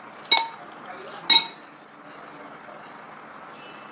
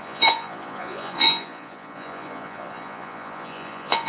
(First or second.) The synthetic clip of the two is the second